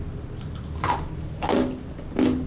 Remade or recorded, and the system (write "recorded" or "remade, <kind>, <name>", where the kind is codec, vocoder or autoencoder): recorded